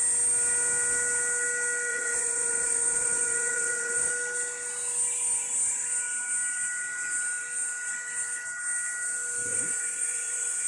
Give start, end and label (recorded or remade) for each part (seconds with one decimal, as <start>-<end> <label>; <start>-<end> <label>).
0.0-1.9 recorded; 1.9-4.1 remade; 4.1-9.5 recorded; 9.5-10.7 remade